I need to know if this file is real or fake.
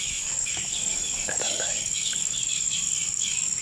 fake